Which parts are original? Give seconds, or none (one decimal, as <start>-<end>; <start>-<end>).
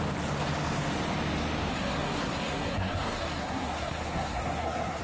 0.0-1.7